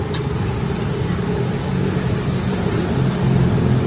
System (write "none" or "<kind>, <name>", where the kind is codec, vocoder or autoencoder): none